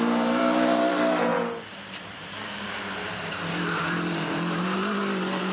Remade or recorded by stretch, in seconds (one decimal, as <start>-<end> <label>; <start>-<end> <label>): 0.0-5.5 remade